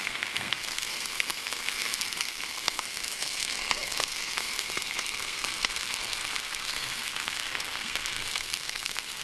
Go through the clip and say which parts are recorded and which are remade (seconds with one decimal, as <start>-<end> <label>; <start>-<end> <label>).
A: 0.0-9.2 remade